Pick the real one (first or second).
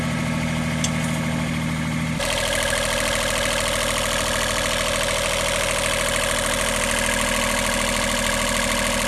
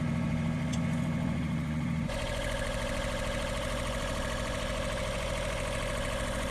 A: first